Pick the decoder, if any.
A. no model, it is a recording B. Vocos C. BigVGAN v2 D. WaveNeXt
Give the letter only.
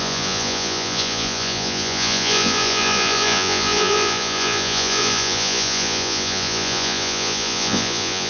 B